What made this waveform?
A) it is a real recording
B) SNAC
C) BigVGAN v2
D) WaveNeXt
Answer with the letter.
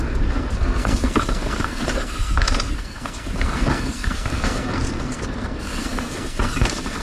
B